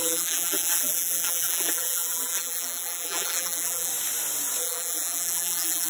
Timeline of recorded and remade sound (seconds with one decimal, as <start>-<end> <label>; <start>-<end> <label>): 0.0-3.9 remade; 3.9-4.6 recorded; 4.6-5.9 remade